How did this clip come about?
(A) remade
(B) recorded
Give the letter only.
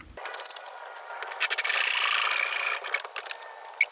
B